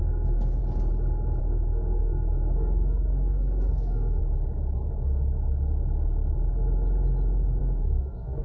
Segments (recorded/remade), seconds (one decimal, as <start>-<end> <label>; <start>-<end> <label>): 0.0-0.6 remade; 0.6-1.4 recorded; 1.4-4.2 remade; 4.2-7.6 recorded; 7.6-8.4 remade